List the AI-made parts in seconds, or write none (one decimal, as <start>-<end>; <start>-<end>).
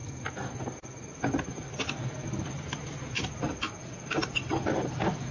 none